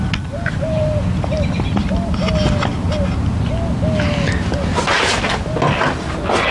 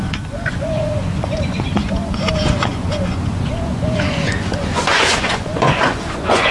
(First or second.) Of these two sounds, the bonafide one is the first